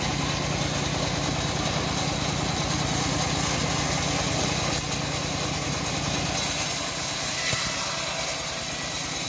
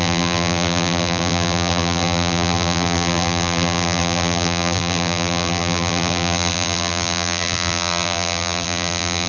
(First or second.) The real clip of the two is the first